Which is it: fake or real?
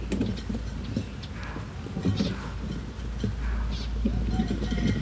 real